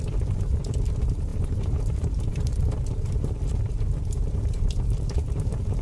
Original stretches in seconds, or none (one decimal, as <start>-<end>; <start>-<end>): none